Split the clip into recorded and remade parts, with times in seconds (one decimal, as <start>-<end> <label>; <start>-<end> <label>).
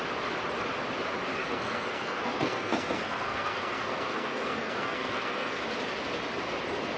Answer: 0.0-1.4 recorded; 1.4-5.6 remade; 5.6-7.0 recorded